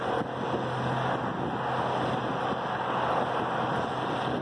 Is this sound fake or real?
real